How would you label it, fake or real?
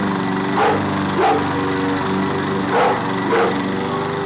real